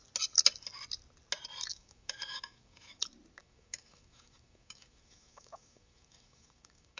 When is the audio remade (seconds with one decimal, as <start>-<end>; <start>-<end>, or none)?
1.7-3.0; 3.4-7.0